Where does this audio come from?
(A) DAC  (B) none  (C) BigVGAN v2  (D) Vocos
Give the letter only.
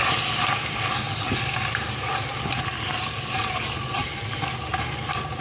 C